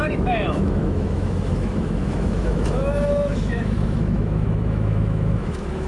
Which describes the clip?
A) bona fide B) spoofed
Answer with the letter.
B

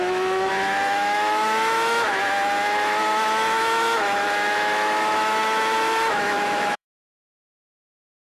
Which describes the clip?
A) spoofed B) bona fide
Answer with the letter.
A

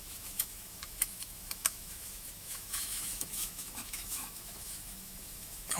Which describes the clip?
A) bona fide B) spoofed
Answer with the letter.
B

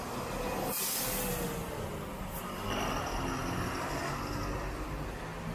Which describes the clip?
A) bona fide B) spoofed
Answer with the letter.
A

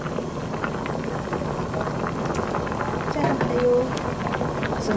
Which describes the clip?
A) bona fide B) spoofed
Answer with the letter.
A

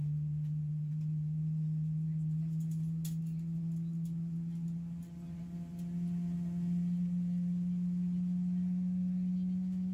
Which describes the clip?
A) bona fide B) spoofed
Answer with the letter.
A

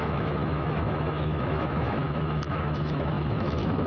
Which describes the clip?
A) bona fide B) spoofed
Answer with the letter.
B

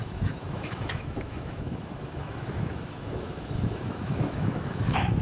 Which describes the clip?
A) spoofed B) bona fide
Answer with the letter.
A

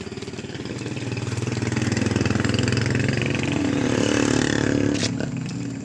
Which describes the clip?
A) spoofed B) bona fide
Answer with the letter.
B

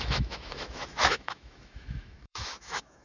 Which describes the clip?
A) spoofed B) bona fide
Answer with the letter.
A